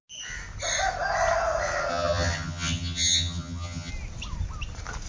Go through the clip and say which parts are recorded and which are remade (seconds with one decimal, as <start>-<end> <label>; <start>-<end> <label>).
0.0-1.9 recorded; 1.9-3.9 remade; 3.9-5.1 recorded